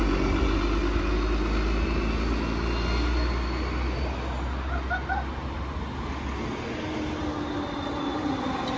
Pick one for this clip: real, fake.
real